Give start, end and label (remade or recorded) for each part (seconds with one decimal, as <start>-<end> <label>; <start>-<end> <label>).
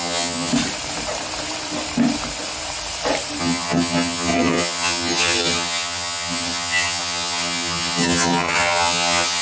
0.0-0.5 remade; 0.5-3.4 recorded; 3.4-9.4 remade